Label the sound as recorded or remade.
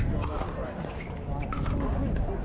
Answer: recorded